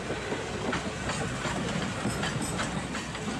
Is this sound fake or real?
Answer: real